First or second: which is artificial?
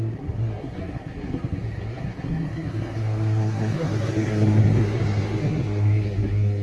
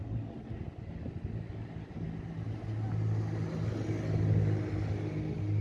first